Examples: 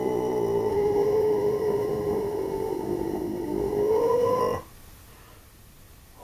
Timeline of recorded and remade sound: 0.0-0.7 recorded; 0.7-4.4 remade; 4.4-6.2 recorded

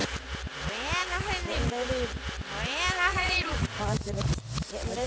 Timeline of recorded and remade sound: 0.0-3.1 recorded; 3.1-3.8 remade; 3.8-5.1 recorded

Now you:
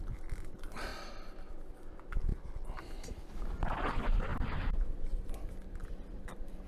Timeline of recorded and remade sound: 0.0-0.9 remade; 0.9-1.5 recorded; 1.5-6.7 remade

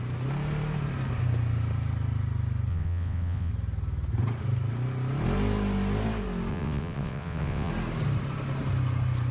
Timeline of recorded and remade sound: 0.0-2.7 recorded; 2.7-3.5 remade; 3.5-6.5 recorded; 6.5-7.7 remade; 7.7-9.3 recorded